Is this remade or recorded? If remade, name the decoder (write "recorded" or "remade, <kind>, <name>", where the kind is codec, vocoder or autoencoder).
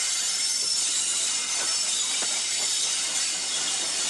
recorded